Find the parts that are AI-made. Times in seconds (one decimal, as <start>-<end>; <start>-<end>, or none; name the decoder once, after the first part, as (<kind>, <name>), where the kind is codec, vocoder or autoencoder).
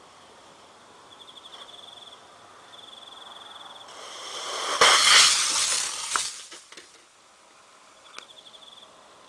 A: none